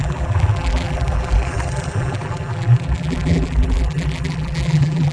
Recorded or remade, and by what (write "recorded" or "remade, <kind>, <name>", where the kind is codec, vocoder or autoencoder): remade, vocoder, BigVGAN v2